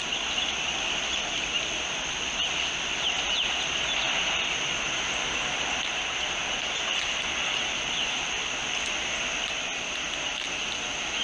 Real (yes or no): yes